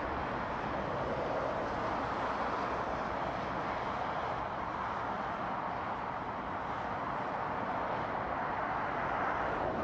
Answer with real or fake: real